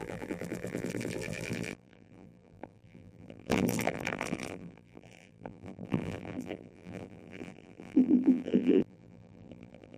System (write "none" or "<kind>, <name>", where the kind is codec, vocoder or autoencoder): vocoder, BigVGAN v2